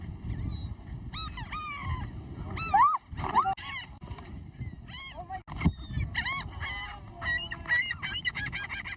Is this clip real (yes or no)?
yes